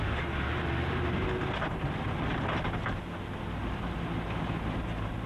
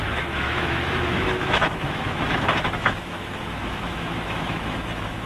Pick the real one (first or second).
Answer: first